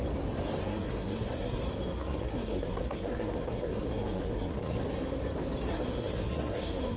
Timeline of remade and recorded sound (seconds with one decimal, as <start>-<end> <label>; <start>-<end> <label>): 0.0-0.6 recorded; 0.6-1.6 remade; 1.6-2.0 recorded; 2.0-4.8 remade; 4.8-5.7 recorded; 5.7-7.0 remade